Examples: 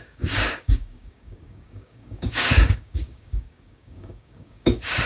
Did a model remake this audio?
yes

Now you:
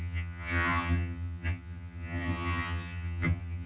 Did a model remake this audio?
yes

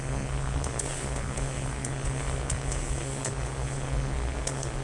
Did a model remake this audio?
yes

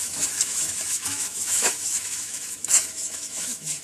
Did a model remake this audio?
yes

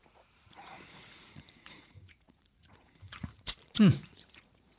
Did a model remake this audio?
yes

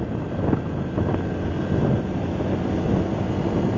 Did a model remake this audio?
no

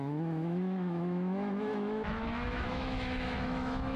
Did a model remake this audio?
yes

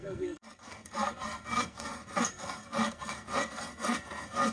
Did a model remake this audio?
yes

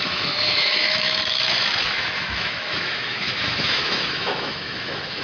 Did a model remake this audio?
yes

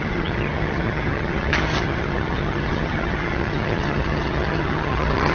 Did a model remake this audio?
yes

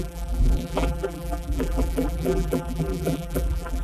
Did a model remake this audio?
yes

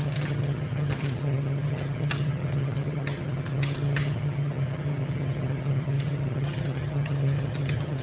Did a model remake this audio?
yes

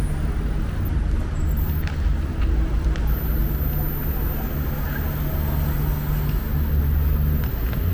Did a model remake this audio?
no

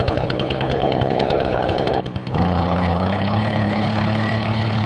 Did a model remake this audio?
yes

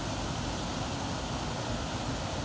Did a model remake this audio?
no